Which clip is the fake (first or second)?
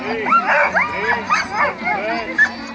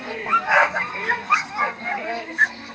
second